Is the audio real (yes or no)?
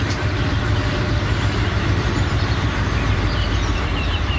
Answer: no